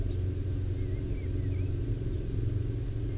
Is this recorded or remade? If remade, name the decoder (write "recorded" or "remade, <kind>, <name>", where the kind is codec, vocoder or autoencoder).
recorded